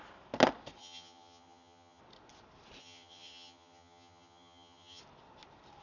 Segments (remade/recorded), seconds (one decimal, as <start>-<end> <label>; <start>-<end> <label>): 0.0-0.8 recorded; 0.8-2.0 remade; 2.0-2.8 recorded; 2.8-5.0 remade; 5.0-5.8 recorded